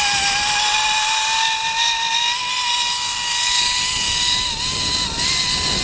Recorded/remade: recorded